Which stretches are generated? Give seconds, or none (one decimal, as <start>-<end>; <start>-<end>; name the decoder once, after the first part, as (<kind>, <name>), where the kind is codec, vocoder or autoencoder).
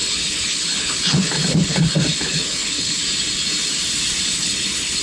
0.0-3.0 (codec, HILCodec); 4.3-5.0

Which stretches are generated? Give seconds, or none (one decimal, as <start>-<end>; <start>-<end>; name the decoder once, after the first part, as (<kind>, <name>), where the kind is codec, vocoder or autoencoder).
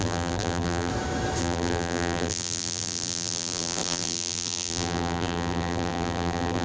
0.0-0.9 (vocoder, BigVGAN v2); 1.4-6.6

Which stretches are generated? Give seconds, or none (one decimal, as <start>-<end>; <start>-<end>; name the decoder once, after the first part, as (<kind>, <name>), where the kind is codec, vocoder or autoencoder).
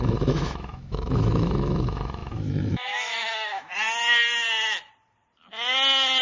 0.0-3.7 (autoencoder, DAC-VAE)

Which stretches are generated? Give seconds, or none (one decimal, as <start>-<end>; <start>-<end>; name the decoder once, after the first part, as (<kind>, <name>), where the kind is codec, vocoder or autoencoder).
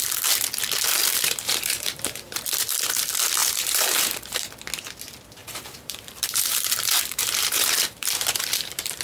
1.0-2.4 (vocoder, BigVGAN v2); 3.4-4.5; 5.4-9.0